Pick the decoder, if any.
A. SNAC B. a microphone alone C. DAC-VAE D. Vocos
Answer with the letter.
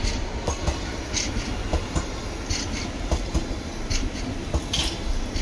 B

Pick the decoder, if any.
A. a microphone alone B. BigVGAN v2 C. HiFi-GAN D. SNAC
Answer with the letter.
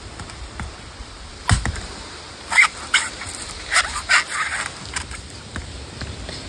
A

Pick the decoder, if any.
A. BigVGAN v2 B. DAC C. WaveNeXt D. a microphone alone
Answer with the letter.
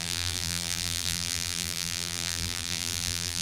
A